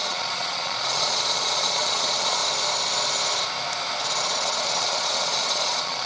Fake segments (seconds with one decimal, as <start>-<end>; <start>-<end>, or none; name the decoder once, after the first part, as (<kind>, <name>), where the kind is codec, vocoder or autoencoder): 0.0-2.4 (vocoder, Vocos); 4.2-6.1